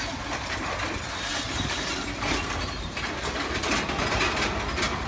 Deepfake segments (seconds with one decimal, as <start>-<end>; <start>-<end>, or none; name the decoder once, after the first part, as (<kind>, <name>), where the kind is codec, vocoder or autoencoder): 1.3-3.2 (vocoder, BigVGAN v2)